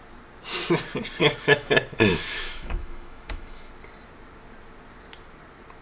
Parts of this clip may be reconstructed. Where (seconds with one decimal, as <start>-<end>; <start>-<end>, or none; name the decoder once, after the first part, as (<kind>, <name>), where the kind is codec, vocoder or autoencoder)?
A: 1.2-1.7 (autoencoder, DAC-VAE); 2.1-3.7